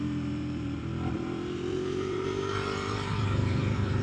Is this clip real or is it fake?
fake